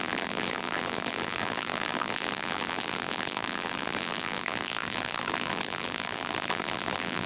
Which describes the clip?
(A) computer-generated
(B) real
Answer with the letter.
A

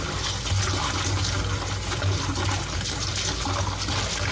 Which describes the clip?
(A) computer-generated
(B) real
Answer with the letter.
B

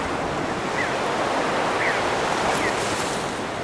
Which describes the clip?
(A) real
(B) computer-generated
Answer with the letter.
A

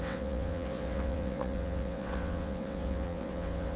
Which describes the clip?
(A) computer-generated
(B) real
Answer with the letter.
A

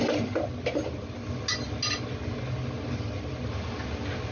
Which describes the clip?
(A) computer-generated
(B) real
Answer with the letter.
B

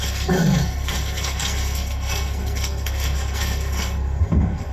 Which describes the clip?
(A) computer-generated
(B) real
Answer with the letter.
A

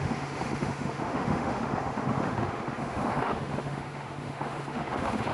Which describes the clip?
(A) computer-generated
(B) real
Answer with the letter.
A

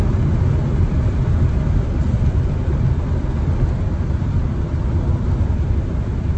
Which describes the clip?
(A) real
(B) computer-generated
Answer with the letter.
A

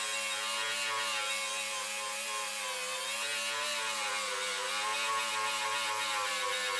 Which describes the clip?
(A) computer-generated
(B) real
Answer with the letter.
B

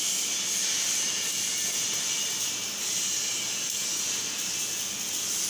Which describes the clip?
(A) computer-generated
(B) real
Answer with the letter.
B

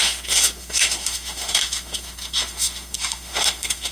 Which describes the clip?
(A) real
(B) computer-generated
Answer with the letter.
B